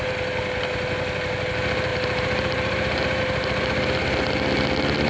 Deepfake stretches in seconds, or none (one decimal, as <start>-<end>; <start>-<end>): 1.9-3.2